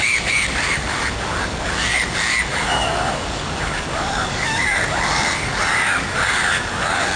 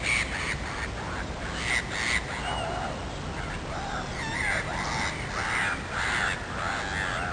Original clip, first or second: second